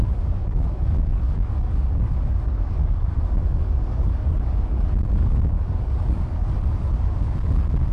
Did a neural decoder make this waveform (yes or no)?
yes